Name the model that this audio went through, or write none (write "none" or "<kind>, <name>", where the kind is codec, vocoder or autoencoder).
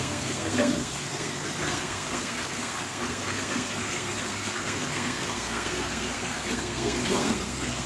codec, SNAC